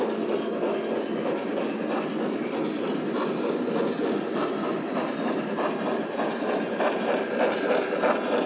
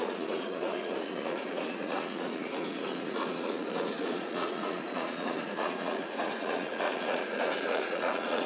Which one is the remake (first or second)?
second